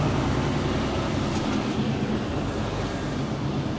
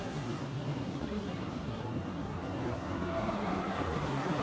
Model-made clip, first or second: second